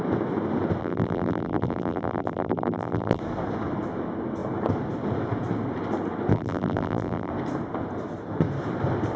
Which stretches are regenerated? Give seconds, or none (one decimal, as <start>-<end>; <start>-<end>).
0.8-3.2; 6.3-7.3